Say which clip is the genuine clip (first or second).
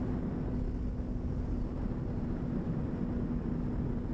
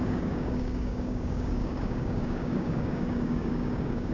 first